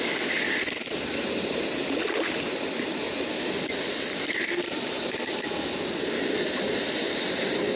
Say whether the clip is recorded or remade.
recorded